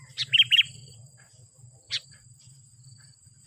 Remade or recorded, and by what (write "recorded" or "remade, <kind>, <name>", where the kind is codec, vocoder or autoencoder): remade, vocoder, BigVGAN v2